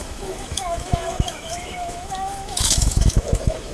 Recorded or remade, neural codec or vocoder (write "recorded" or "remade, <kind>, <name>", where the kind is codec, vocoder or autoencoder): remade, autoencoder, DAC-VAE